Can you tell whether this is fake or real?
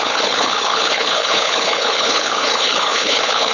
fake